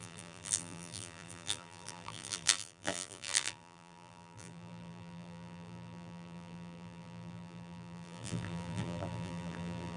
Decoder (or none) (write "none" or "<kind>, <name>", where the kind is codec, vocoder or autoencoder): vocoder, BigVGAN v2